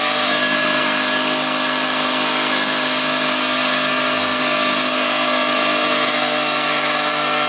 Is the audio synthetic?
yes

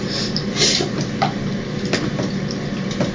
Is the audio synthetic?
no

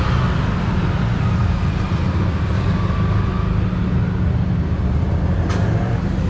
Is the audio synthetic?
no